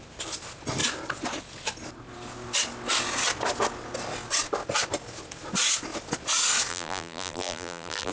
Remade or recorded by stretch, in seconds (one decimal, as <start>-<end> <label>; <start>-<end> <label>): 0.0-6.7 recorded; 6.7-8.1 remade